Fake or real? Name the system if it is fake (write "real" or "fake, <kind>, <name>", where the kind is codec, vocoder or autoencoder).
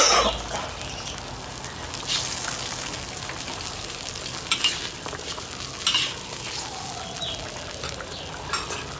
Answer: real